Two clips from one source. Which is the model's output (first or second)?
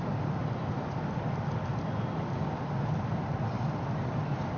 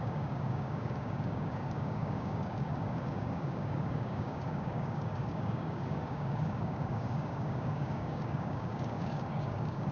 second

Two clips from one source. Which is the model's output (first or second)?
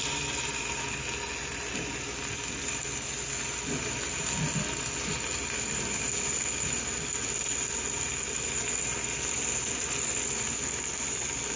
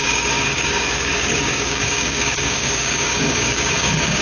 second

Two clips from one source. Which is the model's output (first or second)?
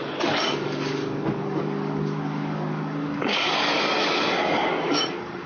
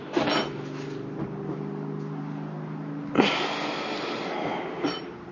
first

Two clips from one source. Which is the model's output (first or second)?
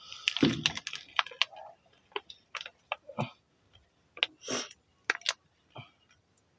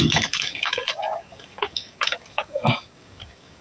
second